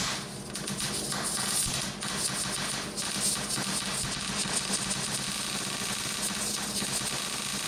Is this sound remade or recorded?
recorded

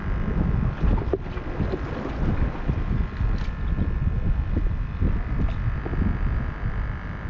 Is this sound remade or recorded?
recorded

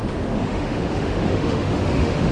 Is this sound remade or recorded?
remade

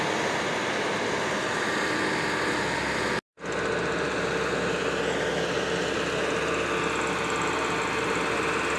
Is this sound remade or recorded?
recorded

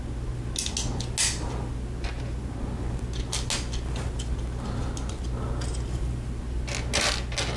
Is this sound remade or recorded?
recorded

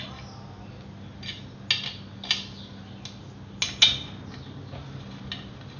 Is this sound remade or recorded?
recorded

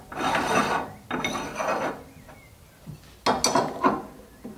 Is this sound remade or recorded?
recorded